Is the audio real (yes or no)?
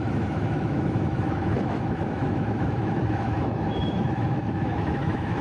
no